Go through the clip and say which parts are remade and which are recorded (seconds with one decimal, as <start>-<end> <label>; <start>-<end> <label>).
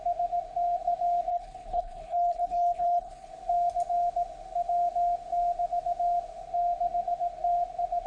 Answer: 0.0-1.3 recorded; 1.3-3.3 remade; 3.3-8.1 recorded